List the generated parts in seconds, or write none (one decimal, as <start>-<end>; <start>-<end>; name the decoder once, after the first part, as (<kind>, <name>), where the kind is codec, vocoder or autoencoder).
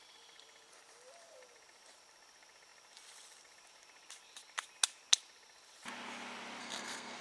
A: 6.6-7.2 (codec, SNAC)